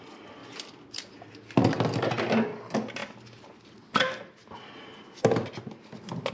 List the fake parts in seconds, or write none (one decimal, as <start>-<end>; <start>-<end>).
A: none